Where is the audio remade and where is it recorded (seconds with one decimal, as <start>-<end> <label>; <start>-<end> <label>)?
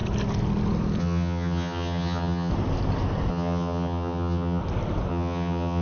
0.0-1.0 recorded; 1.0-2.5 remade; 2.5-3.3 recorded; 3.3-4.6 remade; 4.6-5.1 recorded; 5.1-5.8 remade